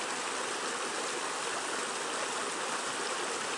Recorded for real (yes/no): yes